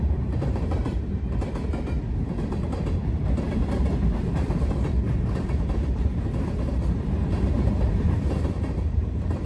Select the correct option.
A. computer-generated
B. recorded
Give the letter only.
A